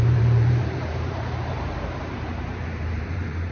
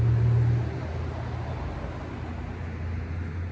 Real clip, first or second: second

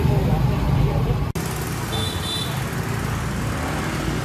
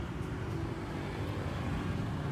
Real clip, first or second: first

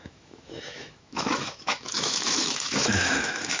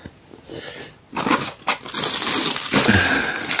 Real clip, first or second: second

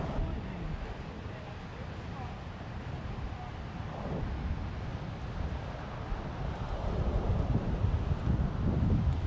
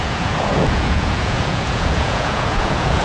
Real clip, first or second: first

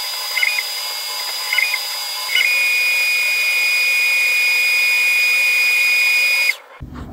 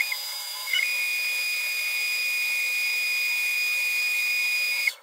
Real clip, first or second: first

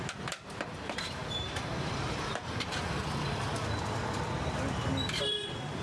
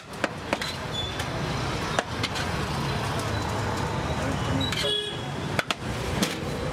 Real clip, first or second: second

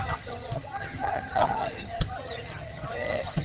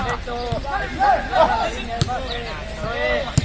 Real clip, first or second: second